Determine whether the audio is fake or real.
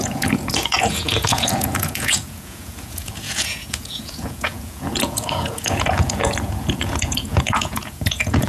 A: fake